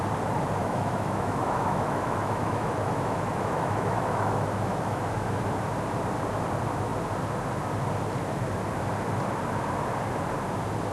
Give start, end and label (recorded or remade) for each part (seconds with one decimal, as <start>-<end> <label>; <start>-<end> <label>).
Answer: 0.0-0.6 recorded; 0.6-5.4 remade; 5.4-10.9 recorded